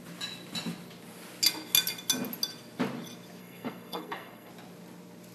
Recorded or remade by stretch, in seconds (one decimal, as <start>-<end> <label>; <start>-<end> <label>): 0.0-3.4 recorded; 3.4-4.5 remade; 4.5-5.3 recorded